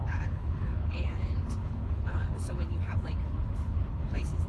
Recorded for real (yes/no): no